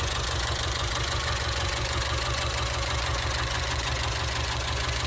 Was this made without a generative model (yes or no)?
no